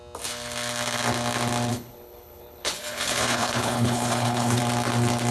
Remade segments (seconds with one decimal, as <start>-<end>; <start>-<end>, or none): 1.7-4.6

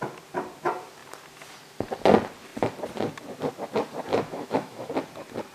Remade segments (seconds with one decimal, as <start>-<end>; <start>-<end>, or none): 4.1-4.9

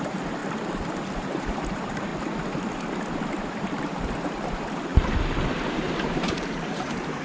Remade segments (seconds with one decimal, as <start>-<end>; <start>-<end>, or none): 0.0-0.4; 1.1-2.1; 3.5-4.9; 5.5-7.2